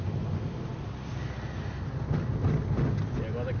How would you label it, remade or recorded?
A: recorded